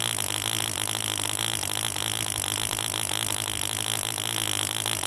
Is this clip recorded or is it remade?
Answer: recorded